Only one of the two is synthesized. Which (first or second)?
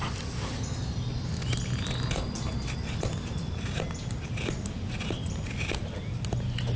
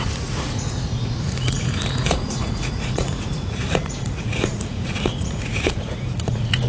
second